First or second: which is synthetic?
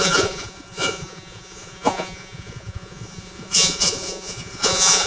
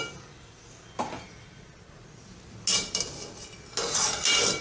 first